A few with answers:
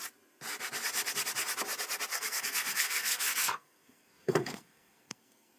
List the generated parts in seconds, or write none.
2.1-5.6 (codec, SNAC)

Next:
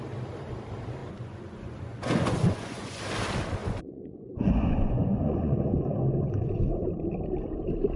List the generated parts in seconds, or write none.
1.0-3.0 (vocoder, Vocos); 3.6-6.9

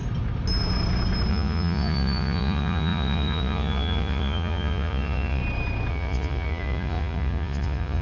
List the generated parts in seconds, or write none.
1.3-5.4 (vocoder, Vocos); 5.9-8.0

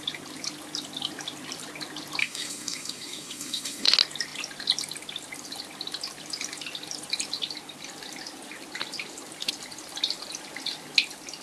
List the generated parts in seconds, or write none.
2.2-3.9 (codec, SNAC)